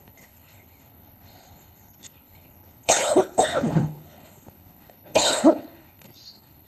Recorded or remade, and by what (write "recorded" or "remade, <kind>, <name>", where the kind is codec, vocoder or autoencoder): remade, codec, HILCodec